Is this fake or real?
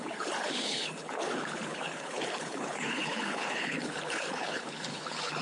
fake